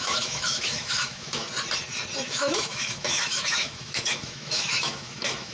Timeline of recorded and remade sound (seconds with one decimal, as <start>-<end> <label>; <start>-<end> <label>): 0.0-1.5 remade; 1.5-2.3 recorded; 2.3-5.5 remade